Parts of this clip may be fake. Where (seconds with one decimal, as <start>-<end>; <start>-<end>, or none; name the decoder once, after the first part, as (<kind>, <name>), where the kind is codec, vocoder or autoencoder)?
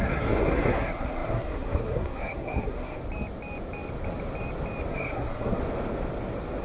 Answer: 0.0-3.0 (codec, SNAC); 4.9-5.6